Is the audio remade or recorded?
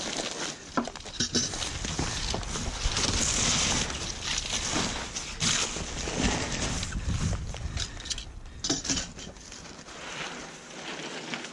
recorded